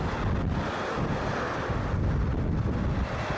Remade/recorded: recorded